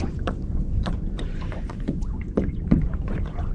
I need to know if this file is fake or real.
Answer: fake